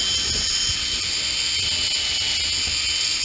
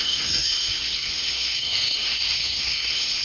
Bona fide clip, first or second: first